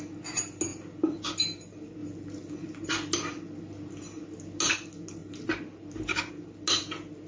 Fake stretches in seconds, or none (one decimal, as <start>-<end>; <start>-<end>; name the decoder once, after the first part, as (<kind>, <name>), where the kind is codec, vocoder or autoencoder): none